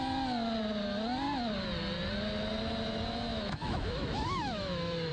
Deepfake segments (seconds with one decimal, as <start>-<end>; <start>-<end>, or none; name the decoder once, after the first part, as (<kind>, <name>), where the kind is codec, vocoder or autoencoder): 3.3-5.1 (autoencoder, DAC-VAE)